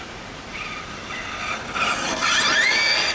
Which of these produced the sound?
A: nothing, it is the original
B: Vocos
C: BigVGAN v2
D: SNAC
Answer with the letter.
A